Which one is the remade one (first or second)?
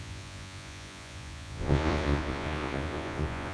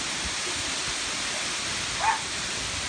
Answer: first